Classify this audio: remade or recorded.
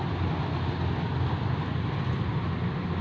recorded